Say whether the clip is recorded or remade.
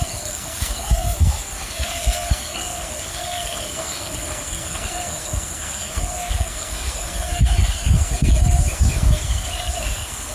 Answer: remade